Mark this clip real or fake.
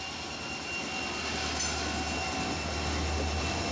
real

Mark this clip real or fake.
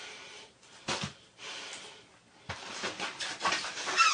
real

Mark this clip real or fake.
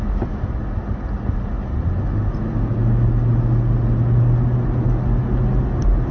real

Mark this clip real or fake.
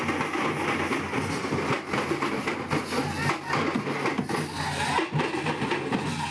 real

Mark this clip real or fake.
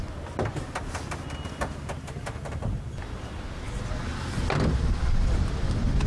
real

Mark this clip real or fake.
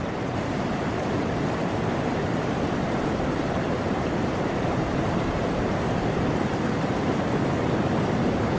fake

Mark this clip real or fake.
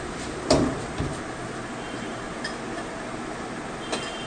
real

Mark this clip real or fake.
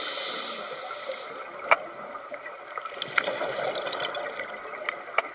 real